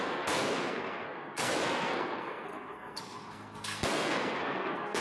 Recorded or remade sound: remade